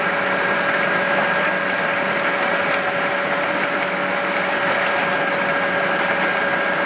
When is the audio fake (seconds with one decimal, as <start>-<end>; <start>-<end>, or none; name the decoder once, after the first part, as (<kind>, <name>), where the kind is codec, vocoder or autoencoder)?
none